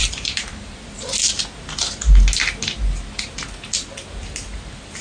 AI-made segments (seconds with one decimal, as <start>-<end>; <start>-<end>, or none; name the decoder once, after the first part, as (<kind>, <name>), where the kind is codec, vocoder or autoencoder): 0.0-1.3 (vocoder, BigVGAN v2)